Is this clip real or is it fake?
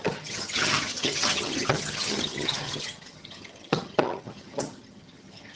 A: fake